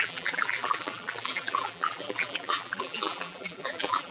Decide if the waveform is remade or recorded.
remade